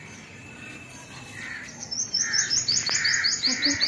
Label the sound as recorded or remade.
remade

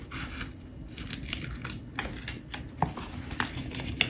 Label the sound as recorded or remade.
recorded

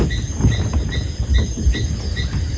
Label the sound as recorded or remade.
recorded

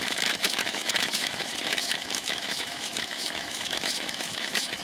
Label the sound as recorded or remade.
remade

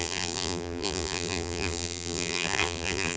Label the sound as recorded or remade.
remade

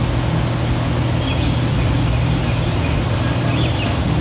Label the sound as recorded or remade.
recorded